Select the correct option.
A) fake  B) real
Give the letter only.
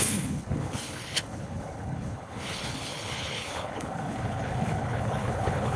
A